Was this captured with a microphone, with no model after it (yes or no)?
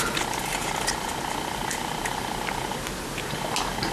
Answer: yes